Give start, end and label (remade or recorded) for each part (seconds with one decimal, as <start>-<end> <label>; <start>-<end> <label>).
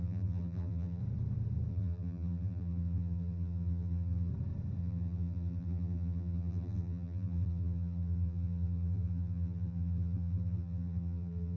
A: 0.0-1.0 remade; 1.0-1.7 recorded; 1.7-4.3 remade; 4.3-4.8 recorded; 4.8-11.6 remade